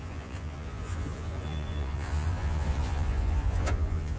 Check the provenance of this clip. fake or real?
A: fake